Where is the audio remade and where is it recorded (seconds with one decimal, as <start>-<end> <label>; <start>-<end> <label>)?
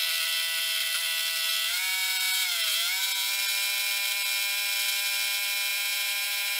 0.0-1.7 recorded; 1.7-3.3 remade; 3.3-5.7 recorded; 5.7-6.6 remade